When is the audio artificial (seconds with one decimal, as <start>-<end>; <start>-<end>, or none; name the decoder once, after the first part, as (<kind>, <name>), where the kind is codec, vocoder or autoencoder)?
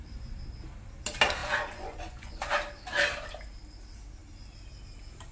1.4-2.5 (vocoder, Vocos)